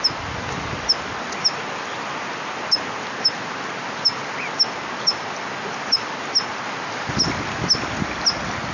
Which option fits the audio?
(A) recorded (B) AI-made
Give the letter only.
A